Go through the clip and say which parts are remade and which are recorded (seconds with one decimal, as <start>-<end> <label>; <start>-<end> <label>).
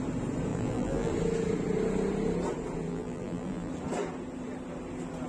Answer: 0.0-0.5 recorded; 0.5-1.1 remade; 1.1-2.9 recorded; 2.9-3.7 remade; 3.7-5.3 recorded